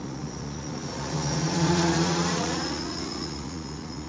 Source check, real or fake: fake